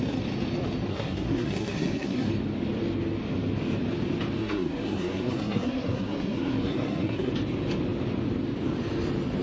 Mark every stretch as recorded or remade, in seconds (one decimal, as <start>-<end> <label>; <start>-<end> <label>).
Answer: 0.0-0.9 recorded; 0.9-2.3 remade; 2.3-4.4 recorded; 4.4-7.3 remade; 7.3-9.4 recorded